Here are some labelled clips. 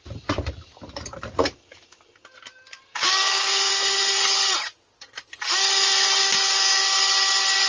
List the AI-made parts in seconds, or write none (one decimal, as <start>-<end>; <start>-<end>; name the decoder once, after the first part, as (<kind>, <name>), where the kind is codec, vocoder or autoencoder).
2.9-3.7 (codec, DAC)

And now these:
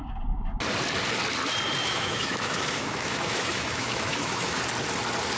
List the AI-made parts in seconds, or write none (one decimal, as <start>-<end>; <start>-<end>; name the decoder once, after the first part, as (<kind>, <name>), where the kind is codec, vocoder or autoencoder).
1.8-4.6 (autoencoder, DAC-VAE)

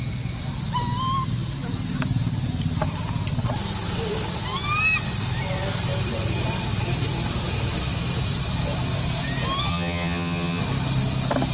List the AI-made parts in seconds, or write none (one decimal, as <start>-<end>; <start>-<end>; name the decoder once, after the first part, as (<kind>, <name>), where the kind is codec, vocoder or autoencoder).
9.7-10.6 (vocoder, HiFi-GAN)